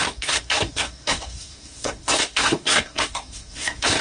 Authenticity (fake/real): fake